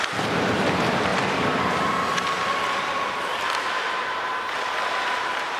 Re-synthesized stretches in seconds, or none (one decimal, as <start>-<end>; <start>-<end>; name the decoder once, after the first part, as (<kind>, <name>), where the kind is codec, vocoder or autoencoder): none